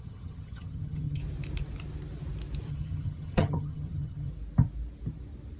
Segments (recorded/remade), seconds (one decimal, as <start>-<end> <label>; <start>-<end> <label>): 0.0-1.2 remade; 1.2-2.7 recorded; 2.7-4.3 remade; 4.3-5.6 recorded